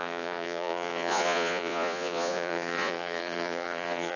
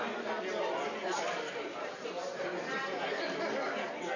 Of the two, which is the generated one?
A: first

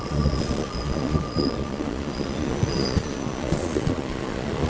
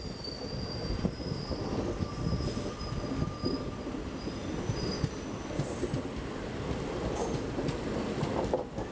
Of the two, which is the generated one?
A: first